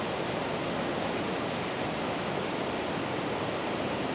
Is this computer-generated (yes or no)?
no